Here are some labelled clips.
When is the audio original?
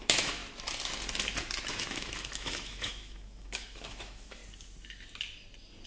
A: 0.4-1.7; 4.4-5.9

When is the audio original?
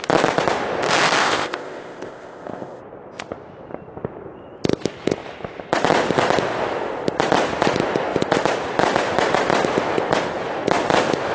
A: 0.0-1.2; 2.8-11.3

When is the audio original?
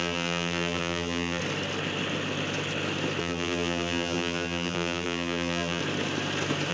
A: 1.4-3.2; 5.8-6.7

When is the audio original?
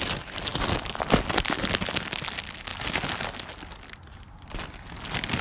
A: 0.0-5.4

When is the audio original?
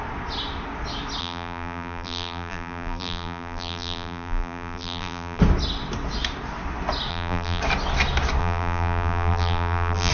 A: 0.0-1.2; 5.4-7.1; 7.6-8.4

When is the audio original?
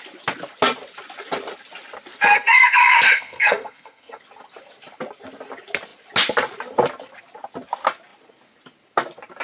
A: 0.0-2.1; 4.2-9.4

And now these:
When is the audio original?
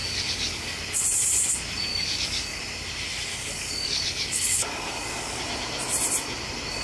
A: 0.8-1.9; 2.6-3.3; 5.4-6.8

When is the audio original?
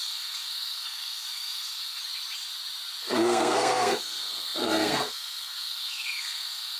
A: 2.0-3.0